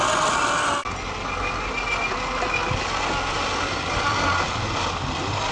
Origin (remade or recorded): recorded